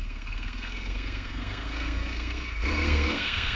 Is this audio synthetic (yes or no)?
yes